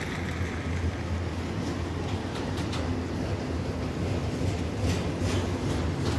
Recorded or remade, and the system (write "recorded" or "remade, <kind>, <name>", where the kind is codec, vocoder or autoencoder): recorded